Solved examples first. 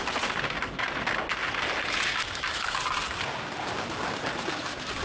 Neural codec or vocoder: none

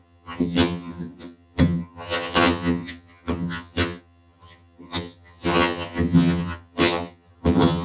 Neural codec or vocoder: vocoder, HiFi-GAN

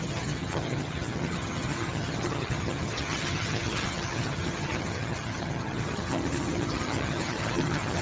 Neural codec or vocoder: vocoder, HiFi-GAN